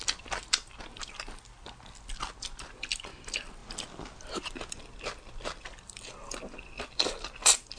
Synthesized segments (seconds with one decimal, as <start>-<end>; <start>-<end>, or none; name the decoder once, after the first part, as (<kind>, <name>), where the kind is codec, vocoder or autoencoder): none